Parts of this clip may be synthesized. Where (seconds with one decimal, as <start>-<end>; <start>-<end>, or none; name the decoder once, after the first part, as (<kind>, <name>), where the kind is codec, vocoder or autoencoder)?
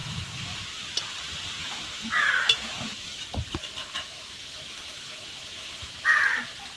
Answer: 0.0-0.6 (autoencoder, DAC-VAE); 1.6-3.2; 3.8-6.0